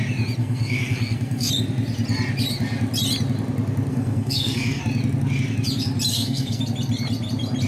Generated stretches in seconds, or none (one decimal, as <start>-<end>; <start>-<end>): 0.4-1.5; 3.9-4.8; 6.1-6.6